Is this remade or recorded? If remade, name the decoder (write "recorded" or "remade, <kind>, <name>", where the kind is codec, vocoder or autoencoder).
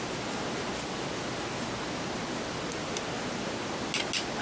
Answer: recorded